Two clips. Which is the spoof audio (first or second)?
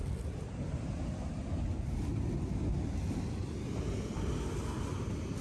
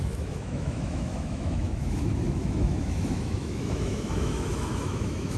second